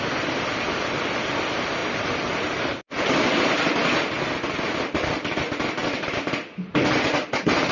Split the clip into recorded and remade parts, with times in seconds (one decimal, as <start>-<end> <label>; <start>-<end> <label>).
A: 0.0-1.8 recorded; 1.8-2.9 remade; 2.9-5.8 recorded; 5.8-7.7 remade